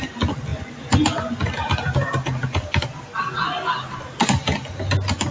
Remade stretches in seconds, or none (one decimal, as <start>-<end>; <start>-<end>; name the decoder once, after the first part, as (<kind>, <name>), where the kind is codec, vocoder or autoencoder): 0.5-3.2 (vocoder, BigVGAN v2)